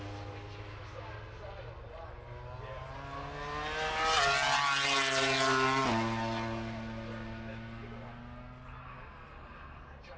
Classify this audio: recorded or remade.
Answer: recorded